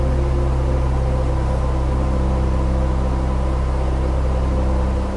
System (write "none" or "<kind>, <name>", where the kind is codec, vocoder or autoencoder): none